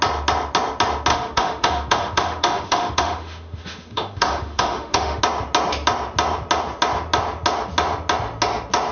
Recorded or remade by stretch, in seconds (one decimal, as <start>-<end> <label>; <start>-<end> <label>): 0.0-1.1 recorded; 1.1-5.2 remade; 5.2-8.9 recorded